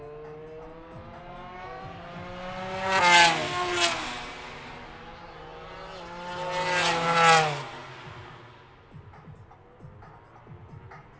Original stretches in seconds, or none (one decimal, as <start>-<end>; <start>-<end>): 0.0-11.2